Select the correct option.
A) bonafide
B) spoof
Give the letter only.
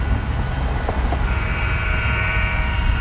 A